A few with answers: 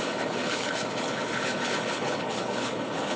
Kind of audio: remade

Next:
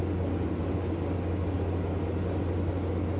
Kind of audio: recorded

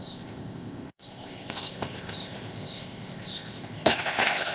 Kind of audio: remade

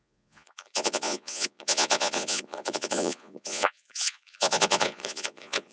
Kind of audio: remade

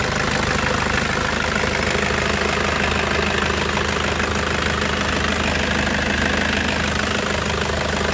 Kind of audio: recorded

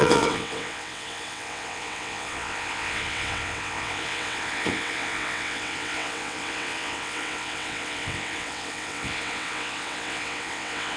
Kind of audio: remade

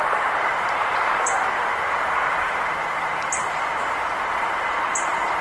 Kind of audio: remade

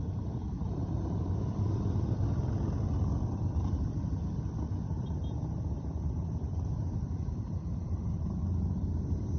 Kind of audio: remade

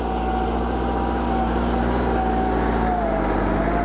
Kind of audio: recorded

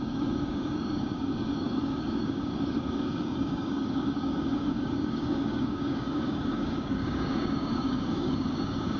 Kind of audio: remade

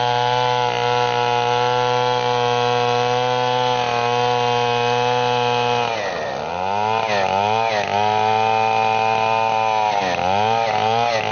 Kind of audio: recorded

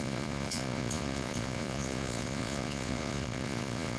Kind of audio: remade